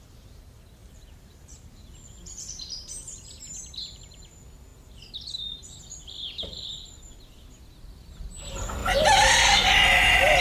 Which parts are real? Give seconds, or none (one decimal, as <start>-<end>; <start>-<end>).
0.0-0.8; 4.3-10.4